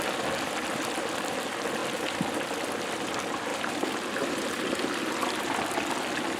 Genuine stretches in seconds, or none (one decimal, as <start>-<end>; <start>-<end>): 0.0-3.5; 4.9-6.4